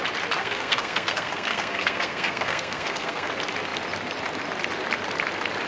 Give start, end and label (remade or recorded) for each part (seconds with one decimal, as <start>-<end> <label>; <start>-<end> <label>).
0.0-0.4 recorded; 0.4-3.3 remade; 3.3-5.7 recorded